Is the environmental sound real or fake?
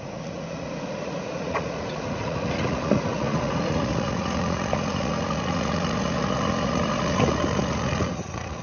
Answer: fake